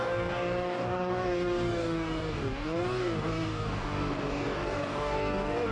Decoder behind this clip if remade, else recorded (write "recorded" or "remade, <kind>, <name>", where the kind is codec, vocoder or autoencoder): remade, codec, DAC